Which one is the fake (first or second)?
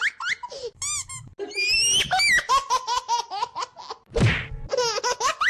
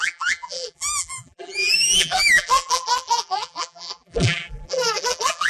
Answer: second